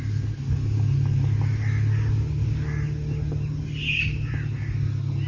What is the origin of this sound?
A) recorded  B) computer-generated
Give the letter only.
A